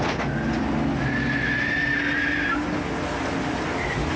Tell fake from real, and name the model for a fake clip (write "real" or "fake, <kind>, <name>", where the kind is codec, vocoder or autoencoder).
real